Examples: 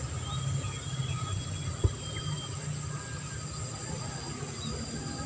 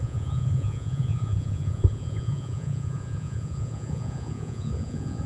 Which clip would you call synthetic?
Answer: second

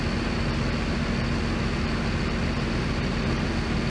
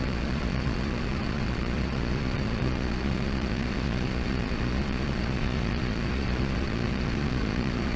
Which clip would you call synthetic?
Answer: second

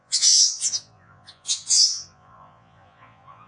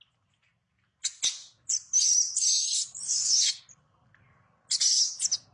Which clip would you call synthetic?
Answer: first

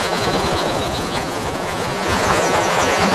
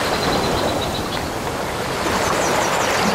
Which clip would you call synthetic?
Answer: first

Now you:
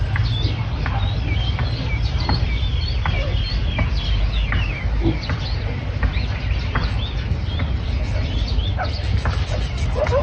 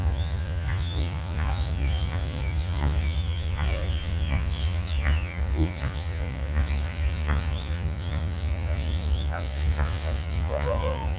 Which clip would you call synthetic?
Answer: second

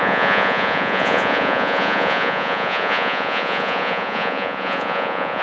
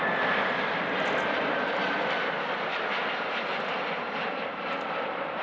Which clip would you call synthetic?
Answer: first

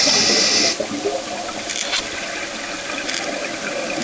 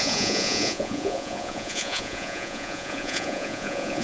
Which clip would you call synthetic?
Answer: second